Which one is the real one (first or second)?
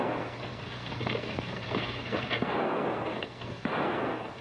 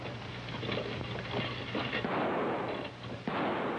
second